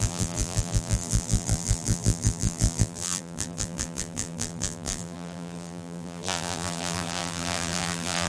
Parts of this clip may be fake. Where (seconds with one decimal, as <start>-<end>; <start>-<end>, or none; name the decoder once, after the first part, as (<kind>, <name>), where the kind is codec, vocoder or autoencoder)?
0.0-8.3 (vocoder, BigVGAN v2)